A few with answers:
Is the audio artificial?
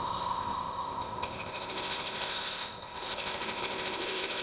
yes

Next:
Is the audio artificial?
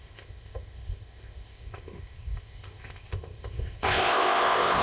yes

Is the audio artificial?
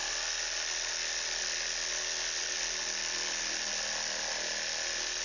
no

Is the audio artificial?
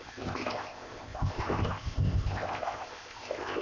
yes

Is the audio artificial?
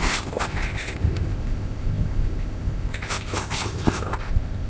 yes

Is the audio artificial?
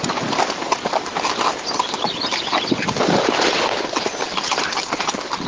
no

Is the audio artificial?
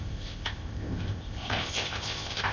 yes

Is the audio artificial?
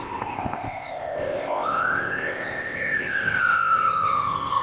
yes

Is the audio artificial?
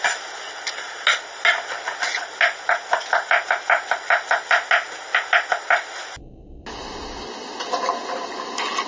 no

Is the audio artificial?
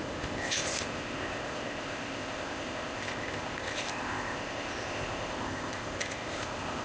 yes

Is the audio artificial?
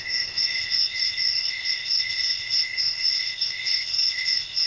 yes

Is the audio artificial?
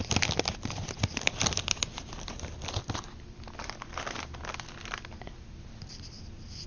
no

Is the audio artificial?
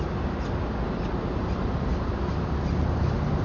no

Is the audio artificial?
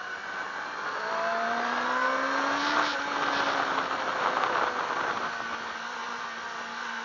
no